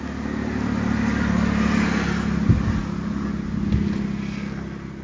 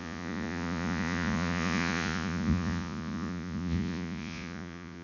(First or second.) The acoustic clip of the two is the first